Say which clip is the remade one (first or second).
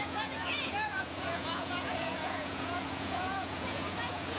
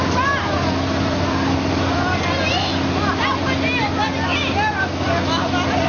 first